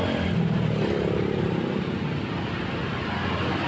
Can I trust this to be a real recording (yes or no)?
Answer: yes